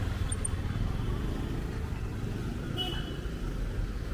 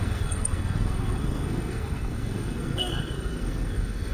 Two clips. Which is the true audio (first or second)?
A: first